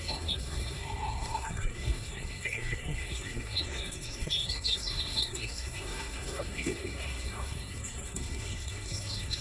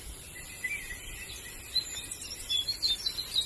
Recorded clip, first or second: second